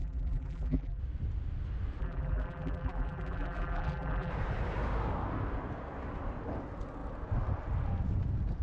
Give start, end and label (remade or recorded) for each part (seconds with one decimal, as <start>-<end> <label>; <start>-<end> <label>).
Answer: 0.0-1.0 remade; 1.0-2.0 recorded; 2.0-4.3 remade; 4.3-8.6 recorded

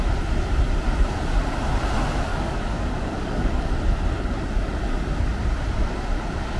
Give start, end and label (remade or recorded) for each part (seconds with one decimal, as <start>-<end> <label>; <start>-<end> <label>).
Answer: 0.0-2.3 recorded; 2.3-3.7 remade; 3.7-6.6 recorded

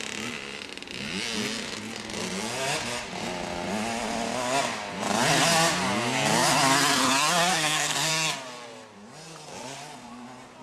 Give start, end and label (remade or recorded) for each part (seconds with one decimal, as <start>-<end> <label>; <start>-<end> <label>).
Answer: 0.0-7.5 recorded; 7.5-8.1 remade; 8.1-10.6 recorded

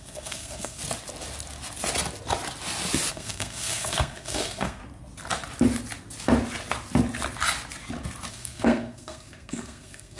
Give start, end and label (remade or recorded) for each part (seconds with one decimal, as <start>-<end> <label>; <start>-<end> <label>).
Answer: 0.0-0.8 remade; 0.8-3.1 recorded; 3.1-4.8 remade; 4.8-8.3 recorded; 8.3-10.2 remade

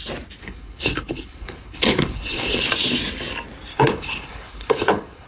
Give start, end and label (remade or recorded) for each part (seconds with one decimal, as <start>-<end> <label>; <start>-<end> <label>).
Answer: 0.0-0.4 recorded; 0.4-2.7 remade; 2.7-3.7 recorded; 3.7-5.3 remade

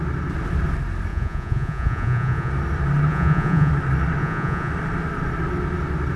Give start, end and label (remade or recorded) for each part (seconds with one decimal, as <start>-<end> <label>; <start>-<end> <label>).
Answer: 0.0-1.1 recorded; 1.1-2.5 remade; 2.5-3.1 recorded; 3.1-3.7 remade; 3.7-4.2 recorded; 4.2-4.7 remade; 4.7-6.2 recorded

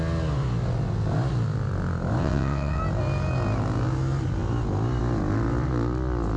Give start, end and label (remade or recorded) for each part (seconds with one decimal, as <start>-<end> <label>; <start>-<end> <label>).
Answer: 0.0-2.2 recorded; 2.2-2.8 remade; 2.8-6.4 recorded

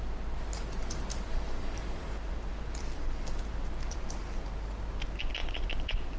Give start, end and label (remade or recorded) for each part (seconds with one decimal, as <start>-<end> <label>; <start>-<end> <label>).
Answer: 0.0-0.8 recorded; 0.8-4.5 remade; 4.5-5.4 recorded; 5.4-6.2 remade